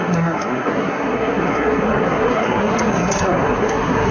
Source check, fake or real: fake